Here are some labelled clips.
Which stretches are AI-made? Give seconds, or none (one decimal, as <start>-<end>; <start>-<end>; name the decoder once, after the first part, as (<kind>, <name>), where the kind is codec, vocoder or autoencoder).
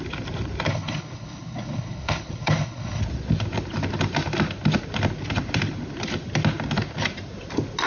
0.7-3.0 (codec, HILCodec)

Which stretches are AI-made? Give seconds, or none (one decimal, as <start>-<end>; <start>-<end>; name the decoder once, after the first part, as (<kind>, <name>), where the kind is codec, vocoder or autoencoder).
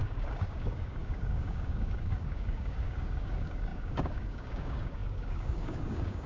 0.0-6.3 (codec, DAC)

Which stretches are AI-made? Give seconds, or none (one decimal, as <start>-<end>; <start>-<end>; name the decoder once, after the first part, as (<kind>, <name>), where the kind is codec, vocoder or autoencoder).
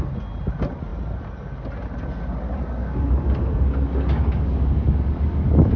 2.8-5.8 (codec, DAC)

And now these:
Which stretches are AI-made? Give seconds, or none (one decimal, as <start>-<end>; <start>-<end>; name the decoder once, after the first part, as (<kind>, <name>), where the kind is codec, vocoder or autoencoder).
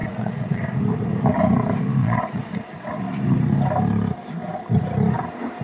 0.0-0.6 (vocoder, Vocos); 2.0-2.9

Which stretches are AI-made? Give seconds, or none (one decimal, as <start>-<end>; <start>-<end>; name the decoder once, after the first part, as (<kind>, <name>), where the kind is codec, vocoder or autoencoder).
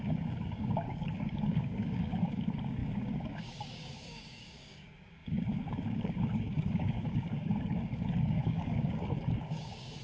0.0-10.0 (codec, DAC)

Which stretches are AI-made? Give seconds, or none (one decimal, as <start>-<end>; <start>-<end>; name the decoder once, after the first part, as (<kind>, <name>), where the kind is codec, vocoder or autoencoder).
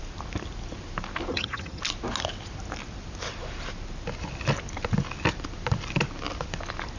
1.3-1.8 (vocoder, HiFi-GAN)